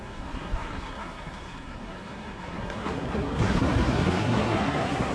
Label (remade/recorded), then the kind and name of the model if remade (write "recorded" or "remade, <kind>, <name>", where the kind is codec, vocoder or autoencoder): remade, codec, SNAC